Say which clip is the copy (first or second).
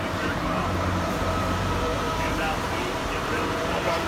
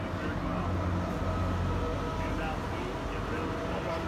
first